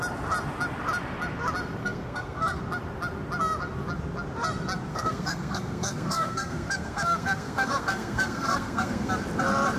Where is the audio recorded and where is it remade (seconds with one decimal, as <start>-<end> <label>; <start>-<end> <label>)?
0.0-1.8 recorded; 1.8-2.6 remade; 2.6-4.9 recorded; 4.9-9.1 remade; 9.1-9.8 recorded